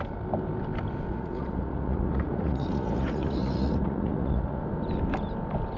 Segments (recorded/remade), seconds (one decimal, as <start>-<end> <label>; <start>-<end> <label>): 0.0-1.1 recorded; 1.1-4.6 remade; 4.6-5.8 recorded